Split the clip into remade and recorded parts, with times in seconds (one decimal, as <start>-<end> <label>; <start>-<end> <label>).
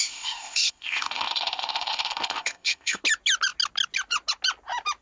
0.0-3.0 remade; 3.0-5.0 recorded